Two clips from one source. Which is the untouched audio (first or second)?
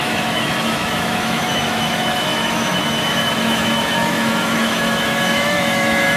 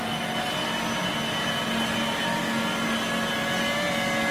second